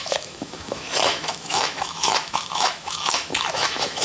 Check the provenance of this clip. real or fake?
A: fake